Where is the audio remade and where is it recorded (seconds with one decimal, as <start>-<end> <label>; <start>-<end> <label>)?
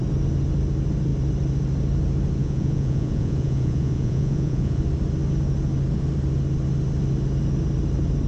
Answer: 0.0-2.4 recorded; 2.4-4.8 remade; 4.8-8.3 recorded